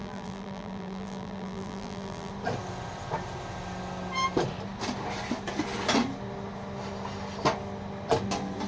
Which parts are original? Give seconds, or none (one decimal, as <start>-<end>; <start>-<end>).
2.3-8.7